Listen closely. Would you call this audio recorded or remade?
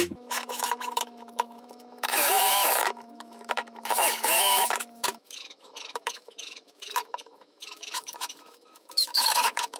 remade